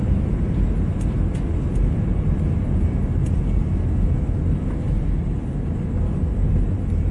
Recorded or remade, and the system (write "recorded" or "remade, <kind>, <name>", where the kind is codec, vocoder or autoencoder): recorded